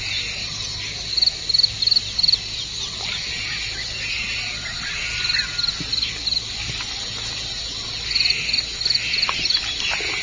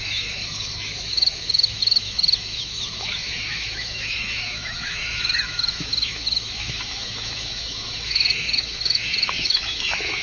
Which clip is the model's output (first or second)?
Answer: second